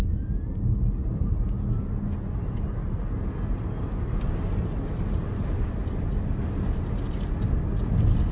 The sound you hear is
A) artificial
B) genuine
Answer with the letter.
B